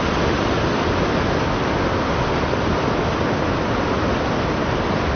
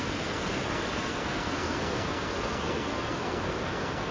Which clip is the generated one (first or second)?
second